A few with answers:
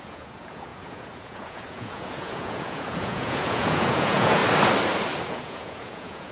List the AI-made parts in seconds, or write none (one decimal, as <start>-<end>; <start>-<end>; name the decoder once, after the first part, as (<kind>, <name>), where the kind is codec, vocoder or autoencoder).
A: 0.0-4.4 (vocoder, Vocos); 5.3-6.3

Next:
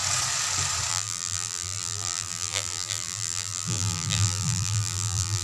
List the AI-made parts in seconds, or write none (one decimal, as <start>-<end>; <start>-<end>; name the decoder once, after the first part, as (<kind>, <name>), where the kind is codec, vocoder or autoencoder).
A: 0.9-5.4 (vocoder, BigVGAN v2)

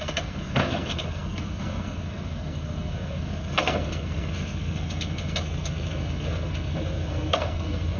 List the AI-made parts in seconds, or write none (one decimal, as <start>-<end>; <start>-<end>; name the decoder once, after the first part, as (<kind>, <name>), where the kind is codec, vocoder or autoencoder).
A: 0.0-8.0 (codec, SNAC)